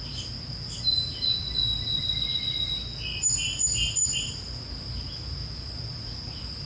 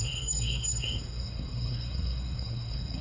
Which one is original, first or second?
first